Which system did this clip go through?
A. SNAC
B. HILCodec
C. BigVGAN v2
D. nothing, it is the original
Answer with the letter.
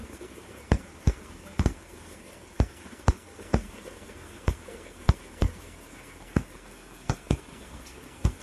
A